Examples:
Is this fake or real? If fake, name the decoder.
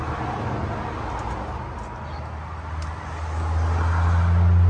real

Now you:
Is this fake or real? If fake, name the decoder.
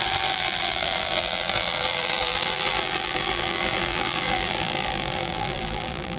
fake, vocoder, BigVGAN v2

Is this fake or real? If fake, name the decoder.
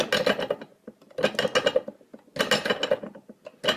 real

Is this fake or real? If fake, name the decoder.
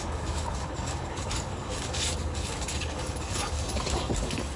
fake, codec, DAC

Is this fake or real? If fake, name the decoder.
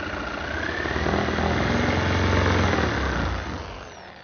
real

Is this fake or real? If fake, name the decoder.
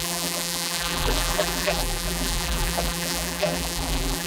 fake, vocoder, BigVGAN v2